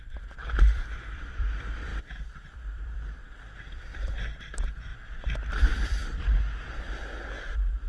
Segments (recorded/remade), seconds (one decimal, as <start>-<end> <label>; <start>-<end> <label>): 0.0-4.9 remade; 4.9-5.5 recorded; 5.5-6.0 remade; 6.0-6.7 recorded; 6.7-7.9 remade